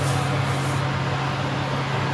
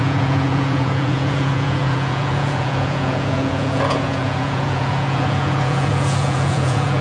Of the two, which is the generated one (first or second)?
second